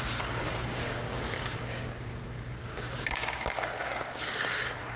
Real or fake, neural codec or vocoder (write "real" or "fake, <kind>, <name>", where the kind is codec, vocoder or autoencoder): fake, codec, DAC